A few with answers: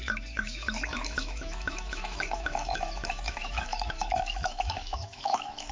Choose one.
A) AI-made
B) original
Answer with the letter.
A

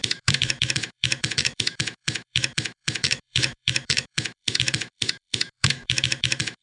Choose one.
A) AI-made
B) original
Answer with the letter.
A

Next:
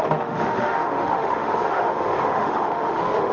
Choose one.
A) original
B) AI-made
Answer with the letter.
B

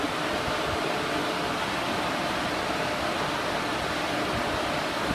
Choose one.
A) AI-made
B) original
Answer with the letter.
B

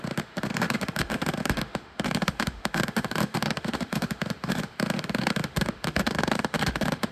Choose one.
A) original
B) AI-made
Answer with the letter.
B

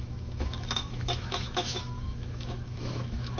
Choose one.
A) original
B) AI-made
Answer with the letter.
B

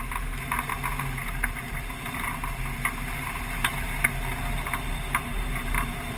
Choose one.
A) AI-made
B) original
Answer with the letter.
B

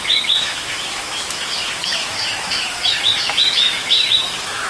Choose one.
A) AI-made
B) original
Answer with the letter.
A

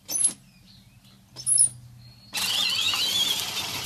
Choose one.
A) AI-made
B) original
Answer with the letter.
B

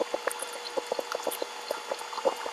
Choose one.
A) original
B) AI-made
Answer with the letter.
A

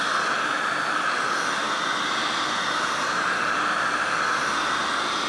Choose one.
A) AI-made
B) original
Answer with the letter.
B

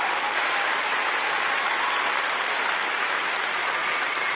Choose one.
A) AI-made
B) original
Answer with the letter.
B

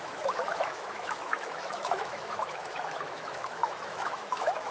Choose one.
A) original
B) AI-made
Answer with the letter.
B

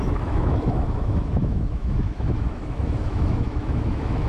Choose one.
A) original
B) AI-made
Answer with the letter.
B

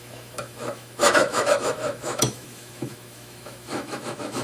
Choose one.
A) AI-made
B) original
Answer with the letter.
A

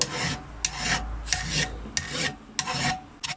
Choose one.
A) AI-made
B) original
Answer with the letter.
B